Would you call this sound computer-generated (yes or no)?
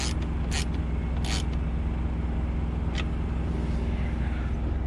no